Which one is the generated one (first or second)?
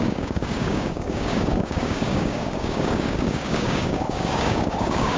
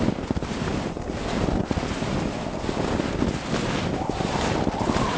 first